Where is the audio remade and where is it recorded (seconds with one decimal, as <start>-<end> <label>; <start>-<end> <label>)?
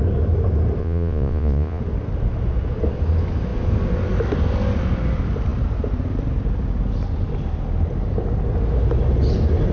0.0-0.8 recorded; 0.8-1.8 remade; 1.8-9.7 recorded